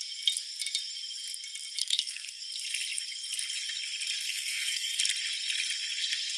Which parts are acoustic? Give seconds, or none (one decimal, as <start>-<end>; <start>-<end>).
0.0-1.8; 2.4-4.3; 5.0-6.4